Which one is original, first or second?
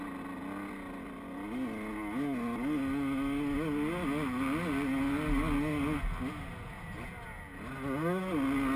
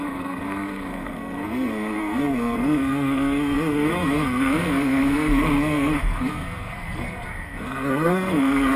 first